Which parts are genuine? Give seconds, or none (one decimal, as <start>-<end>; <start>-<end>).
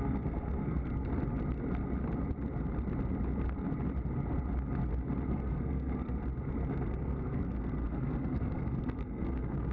0.9-5.3; 6.2-6.7